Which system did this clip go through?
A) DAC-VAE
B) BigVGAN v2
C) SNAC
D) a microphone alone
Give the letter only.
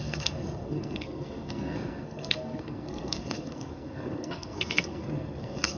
C